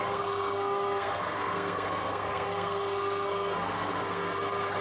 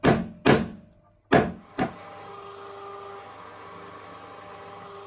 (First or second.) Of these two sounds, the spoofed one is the first